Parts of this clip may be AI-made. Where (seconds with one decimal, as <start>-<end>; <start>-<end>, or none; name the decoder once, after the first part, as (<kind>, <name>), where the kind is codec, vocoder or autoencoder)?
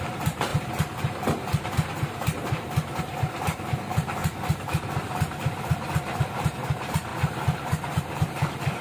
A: 0.0-4.2 (vocoder, BigVGAN v2); 4.8-8.8